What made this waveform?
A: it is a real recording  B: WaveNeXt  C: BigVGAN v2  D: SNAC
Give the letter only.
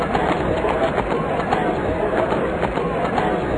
C